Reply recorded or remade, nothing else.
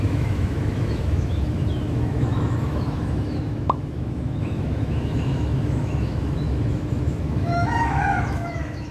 remade